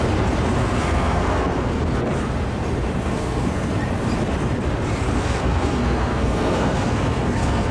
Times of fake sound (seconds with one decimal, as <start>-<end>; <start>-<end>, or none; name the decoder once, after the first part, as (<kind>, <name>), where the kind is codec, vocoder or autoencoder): 0.6-1.8 (codec, SNAC); 3.1-3.7; 5.2-7.7